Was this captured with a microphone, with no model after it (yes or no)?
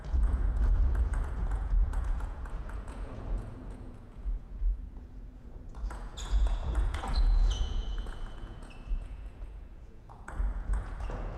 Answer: no